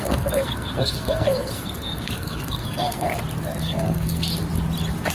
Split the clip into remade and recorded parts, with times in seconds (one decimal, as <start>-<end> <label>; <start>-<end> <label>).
0.0-3.1 remade; 3.1-3.6 recorded; 3.6-4.3 remade; 4.3-5.1 recorded